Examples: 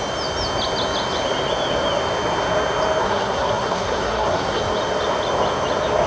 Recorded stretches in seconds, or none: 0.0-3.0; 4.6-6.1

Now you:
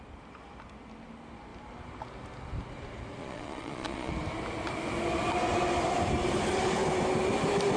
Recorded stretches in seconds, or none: 0.0-3.2; 4.1-7.8

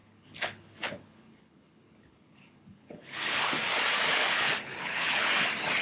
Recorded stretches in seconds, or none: 3.5-4.1; 5.3-5.8

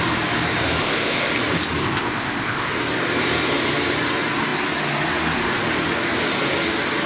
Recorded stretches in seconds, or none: 0.0-0.8; 1.3-1.8; 2.7-7.1